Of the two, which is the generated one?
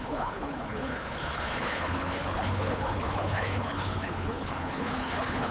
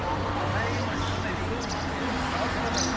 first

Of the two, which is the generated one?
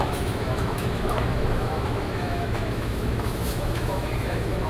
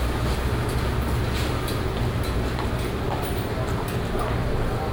first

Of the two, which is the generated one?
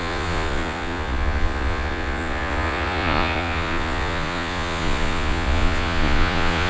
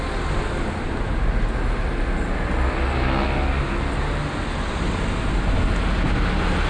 first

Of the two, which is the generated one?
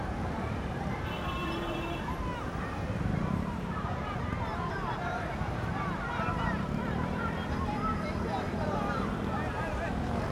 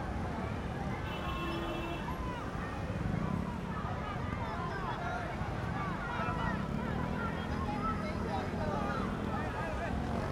first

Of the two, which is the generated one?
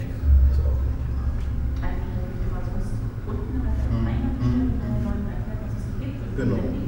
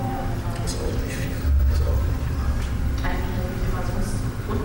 second